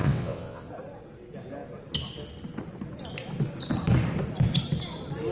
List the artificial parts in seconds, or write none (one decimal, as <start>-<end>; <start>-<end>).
0.0-0.7